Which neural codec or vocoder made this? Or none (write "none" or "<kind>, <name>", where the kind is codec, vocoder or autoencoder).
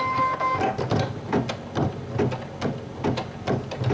none